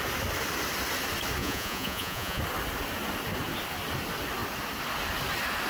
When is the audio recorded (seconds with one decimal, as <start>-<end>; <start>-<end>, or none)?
0.0-1.4; 2.4-5.7